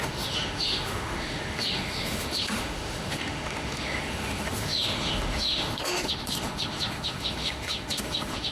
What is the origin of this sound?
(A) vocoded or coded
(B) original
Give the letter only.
A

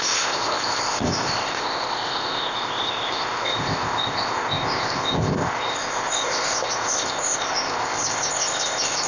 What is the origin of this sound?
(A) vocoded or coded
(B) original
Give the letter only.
A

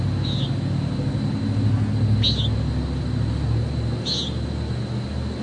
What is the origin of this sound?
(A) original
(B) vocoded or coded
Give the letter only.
A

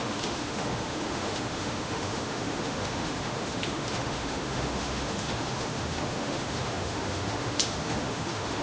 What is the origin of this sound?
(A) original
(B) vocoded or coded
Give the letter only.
B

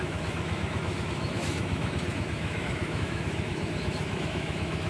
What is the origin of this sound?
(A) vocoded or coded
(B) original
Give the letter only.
A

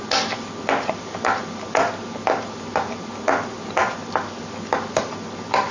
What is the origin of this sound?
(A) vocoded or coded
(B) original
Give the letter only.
B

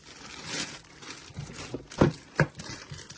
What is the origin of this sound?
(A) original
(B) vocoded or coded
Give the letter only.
A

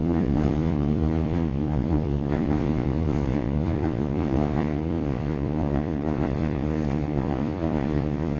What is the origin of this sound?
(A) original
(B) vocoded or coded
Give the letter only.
B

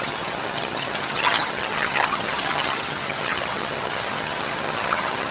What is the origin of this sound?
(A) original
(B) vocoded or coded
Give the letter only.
B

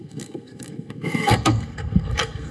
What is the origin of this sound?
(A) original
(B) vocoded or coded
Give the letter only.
B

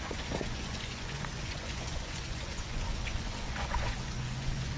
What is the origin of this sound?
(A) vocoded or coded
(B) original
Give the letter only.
A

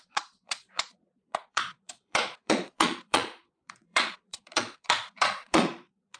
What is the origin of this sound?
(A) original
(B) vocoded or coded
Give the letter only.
B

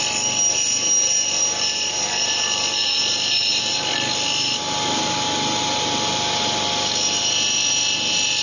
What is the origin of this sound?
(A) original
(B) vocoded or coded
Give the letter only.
A